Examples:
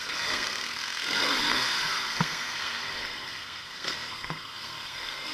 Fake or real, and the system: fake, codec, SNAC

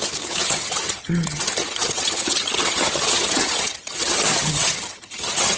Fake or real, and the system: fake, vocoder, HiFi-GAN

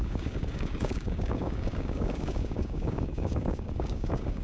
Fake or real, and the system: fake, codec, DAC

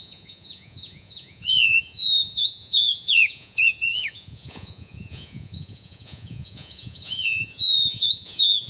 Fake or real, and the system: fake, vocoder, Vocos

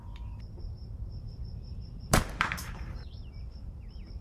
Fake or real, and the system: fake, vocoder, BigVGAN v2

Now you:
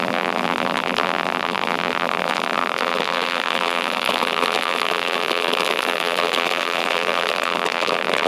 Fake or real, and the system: fake, vocoder, BigVGAN v2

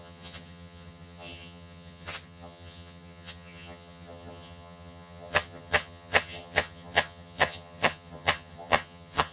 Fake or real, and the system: fake, vocoder, HiFi-GAN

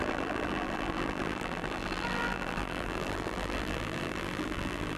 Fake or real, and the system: fake, vocoder, BigVGAN v2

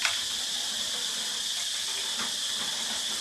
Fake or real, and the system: real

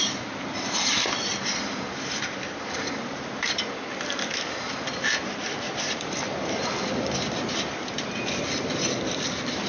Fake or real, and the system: fake, vocoder, BigVGAN v2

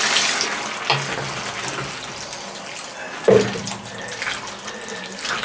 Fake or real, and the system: real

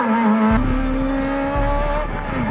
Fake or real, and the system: real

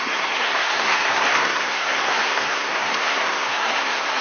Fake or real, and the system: fake, codec, SNAC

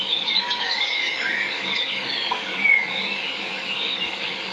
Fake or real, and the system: fake, codec, DAC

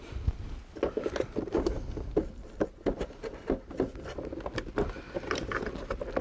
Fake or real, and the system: real